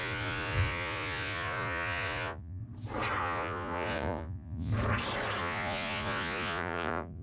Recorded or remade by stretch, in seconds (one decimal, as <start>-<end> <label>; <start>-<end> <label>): 0.0-2.6 remade; 2.6-3.2 recorded; 3.2-4.7 remade; 4.7-5.4 recorded; 5.4-7.2 remade